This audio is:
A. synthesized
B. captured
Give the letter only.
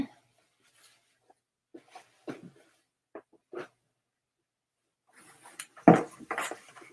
B